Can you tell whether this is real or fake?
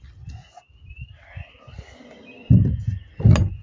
real